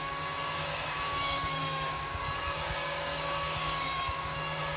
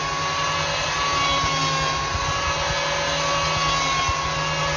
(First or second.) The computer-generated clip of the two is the first